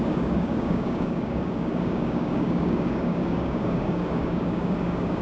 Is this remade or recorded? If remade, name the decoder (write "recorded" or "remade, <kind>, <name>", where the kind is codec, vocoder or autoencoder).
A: remade, codec, DAC